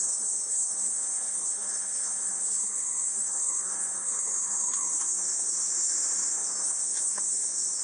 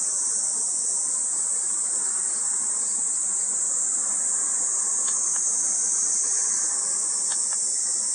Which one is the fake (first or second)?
first